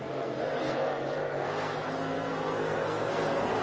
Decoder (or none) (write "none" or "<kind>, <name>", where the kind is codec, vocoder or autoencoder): codec, SNAC